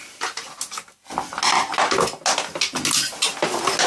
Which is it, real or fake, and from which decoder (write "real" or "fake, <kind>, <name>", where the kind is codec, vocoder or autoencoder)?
real